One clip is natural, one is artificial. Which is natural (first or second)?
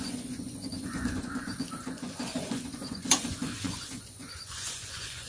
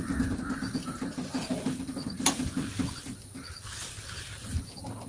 second